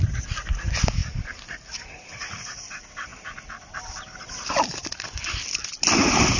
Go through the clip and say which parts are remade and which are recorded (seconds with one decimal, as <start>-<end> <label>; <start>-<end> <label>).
0.0-6.4 recorded